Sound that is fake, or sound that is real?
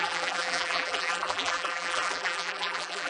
fake